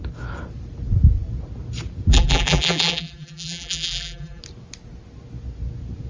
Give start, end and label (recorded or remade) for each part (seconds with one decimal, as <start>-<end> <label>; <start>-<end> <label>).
0.0-2.1 recorded; 2.1-4.4 remade; 4.4-6.1 recorded